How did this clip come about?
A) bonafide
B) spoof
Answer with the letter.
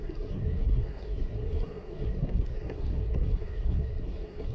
B